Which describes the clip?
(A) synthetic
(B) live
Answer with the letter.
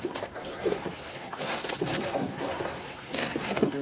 A